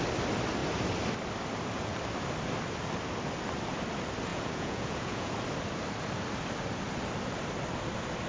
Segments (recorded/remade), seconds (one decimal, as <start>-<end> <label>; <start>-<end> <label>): 0.0-4.3 recorded; 4.3-5.3 remade; 5.3-8.3 recorded